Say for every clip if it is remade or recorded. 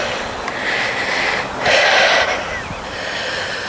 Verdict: recorded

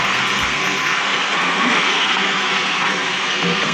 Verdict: remade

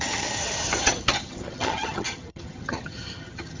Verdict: remade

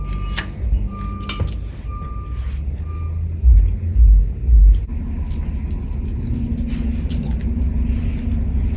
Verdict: recorded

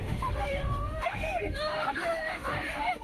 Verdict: remade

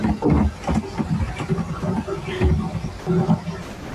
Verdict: recorded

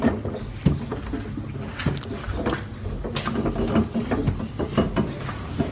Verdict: recorded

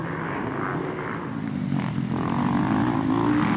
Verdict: recorded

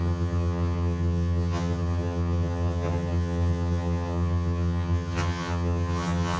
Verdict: remade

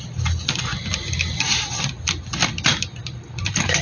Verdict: recorded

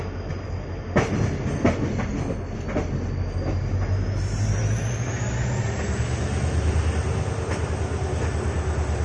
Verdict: recorded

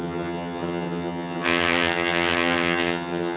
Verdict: remade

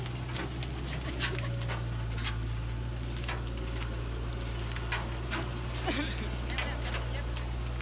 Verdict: recorded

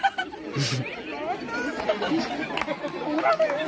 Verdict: recorded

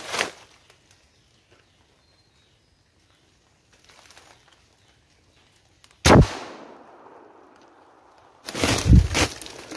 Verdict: recorded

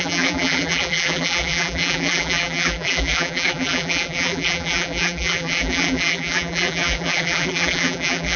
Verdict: remade